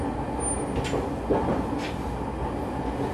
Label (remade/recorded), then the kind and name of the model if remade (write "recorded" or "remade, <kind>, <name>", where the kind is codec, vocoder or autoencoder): recorded